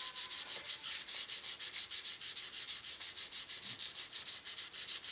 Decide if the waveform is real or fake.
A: real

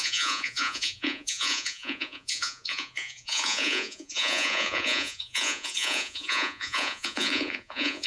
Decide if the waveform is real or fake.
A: fake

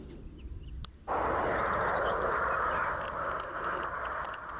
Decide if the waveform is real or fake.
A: real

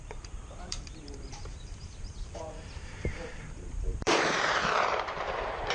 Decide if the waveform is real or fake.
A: fake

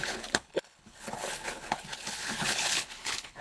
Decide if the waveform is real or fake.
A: fake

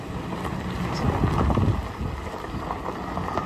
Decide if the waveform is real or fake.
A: real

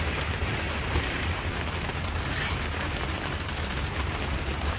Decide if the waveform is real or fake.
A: fake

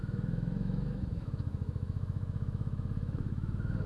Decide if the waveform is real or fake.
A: fake